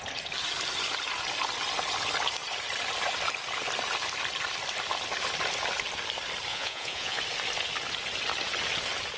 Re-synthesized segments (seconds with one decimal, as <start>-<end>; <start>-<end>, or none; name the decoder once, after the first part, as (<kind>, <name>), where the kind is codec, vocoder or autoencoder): 6.5-7.2 (vocoder, Vocos)